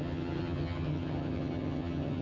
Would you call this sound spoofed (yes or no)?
yes